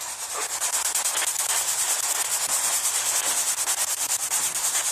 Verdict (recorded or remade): recorded